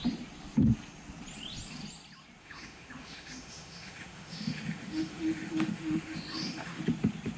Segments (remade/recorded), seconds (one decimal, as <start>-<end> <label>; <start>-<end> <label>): 0.0-2.4 recorded; 2.4-6.8 remade; 6.8-7.4 recorded